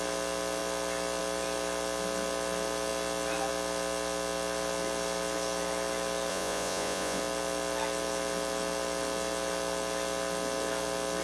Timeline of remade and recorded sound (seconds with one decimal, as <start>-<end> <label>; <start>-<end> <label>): 0.0-6.3 recorded; 6.3-7.2 remade; 7.2-11.2 recorded